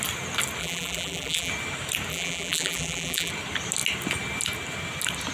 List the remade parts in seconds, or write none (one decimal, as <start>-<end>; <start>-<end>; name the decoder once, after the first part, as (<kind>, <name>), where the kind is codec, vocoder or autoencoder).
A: 0.6-1.5 (vocoder, BigVGAN v2); 2.1-3.3